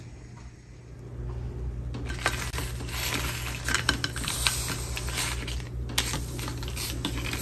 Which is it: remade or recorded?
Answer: recorded